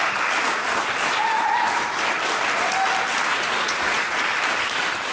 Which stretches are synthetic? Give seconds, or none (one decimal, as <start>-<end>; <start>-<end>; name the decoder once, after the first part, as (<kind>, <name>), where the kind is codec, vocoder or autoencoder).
3.3-4.2 (vocoder, Vocos)